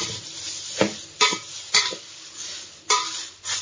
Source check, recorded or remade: recorded